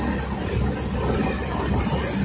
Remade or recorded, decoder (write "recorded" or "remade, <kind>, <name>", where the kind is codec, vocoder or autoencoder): recorded